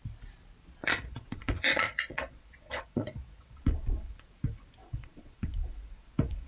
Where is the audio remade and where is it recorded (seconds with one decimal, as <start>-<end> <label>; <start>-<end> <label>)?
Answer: 0.0-0.8 recorded; 0.8-4.3 remade; 4.3-4.8 recorded; 4.8-6.5 remade